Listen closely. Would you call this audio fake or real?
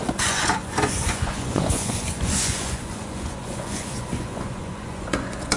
fake